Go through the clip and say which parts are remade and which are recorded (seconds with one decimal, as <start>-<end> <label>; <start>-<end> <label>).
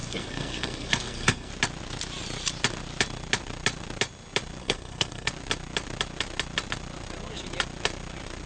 0.0-1.5 remade; 1.5-4.6 recorded; 4.6-5.3 remade; 5.3-8.5 recorded